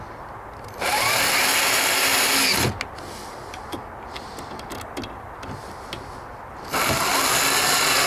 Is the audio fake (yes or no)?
no